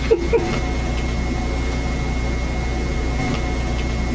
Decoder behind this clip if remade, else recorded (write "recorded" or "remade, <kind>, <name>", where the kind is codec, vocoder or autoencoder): recorded